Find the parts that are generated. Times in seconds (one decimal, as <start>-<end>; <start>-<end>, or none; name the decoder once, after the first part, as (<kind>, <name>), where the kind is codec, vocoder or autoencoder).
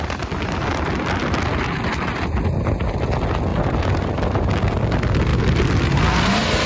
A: none